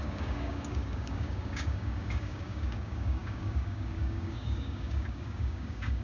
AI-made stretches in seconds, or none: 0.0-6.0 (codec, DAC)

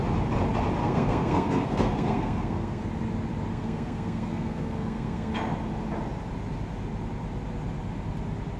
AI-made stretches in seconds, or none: 0.8-2.8 (codec, SNAC); 3.5-5.3

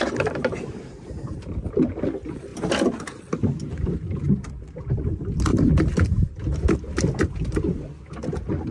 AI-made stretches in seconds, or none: 5.5-7.9 (vocoder, BigVGAN v2)

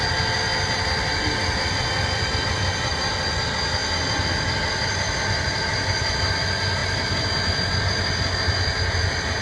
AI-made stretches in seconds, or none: none